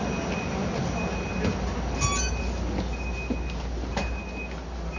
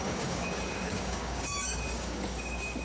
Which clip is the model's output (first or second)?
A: second